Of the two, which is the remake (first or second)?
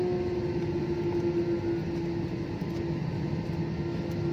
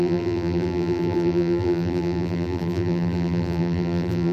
second